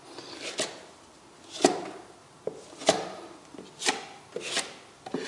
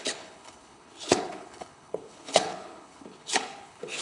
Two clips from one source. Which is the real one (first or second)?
first